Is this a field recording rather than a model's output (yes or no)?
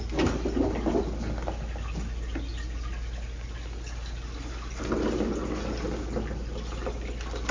yes